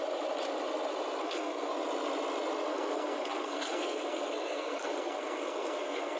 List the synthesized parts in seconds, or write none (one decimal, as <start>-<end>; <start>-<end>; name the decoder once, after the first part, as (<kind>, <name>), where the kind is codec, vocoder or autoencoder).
1.2-1.7 (codec, SNAC); 2.7-6.2